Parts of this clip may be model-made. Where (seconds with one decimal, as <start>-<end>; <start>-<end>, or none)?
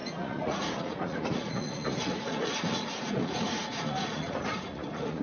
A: 0.0-5.2